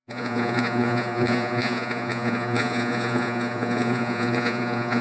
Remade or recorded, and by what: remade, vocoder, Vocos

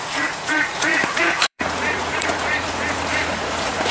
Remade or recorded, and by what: remade, vocoder, Vocos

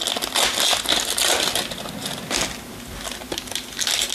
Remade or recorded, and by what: recorded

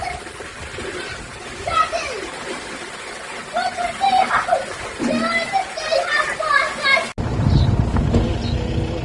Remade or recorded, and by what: recorded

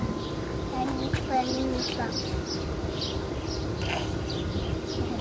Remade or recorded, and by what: recorded